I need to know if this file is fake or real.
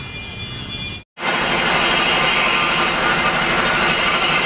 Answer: real